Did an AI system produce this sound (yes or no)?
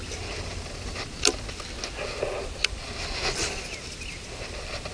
no